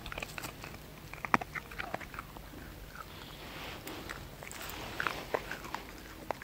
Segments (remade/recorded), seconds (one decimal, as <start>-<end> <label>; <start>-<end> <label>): 0.0-6.4 recorded